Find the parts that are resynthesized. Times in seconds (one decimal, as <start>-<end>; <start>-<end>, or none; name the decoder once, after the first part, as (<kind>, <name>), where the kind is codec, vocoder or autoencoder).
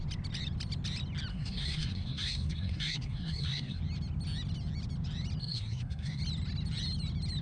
1.3-3.8 (codec, SNAC); 5.4-6.2